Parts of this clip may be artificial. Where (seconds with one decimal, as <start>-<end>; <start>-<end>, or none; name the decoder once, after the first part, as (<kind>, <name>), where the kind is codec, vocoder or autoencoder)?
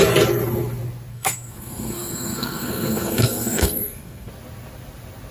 1.1-4.3 (codec, SNAC)